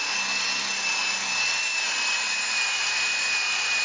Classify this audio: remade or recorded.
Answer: recorded